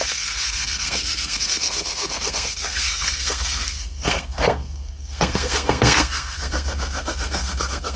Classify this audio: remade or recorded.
remade